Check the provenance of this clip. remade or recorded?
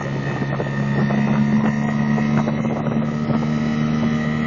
recorded